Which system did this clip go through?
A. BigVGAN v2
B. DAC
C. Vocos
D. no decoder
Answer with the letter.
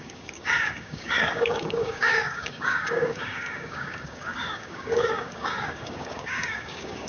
B